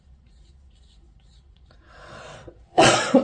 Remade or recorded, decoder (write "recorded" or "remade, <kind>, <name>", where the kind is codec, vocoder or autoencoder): remade, vocoder, Vocos